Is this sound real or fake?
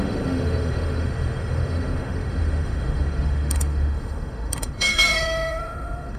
fake